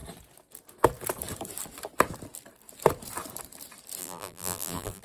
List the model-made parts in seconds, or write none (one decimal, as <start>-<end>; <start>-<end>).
4.0-5.0